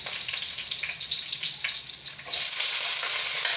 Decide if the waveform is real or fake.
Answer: real